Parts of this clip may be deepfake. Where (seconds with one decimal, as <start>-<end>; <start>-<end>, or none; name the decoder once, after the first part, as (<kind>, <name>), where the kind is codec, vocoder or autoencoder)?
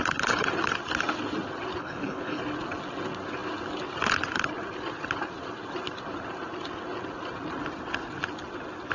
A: 1.8-2.4 (codec, HILCodec)